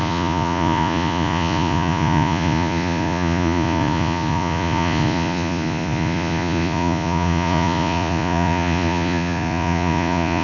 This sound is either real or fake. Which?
fake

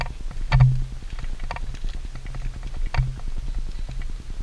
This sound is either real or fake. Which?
real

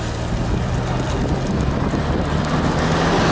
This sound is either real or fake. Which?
real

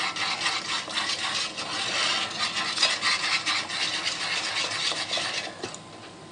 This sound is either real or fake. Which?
real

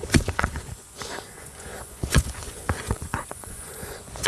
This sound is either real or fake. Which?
fake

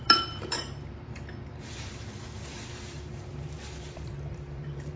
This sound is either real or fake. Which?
fake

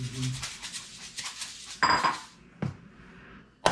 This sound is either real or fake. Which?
real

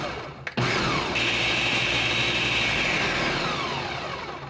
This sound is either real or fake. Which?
real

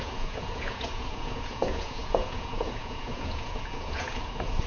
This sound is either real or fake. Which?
fake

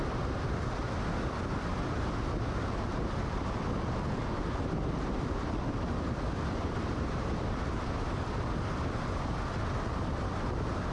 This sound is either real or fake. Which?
real